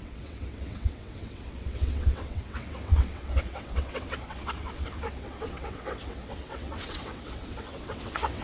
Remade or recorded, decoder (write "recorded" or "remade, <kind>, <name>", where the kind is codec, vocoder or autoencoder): remade, vocoder, WaveNeXt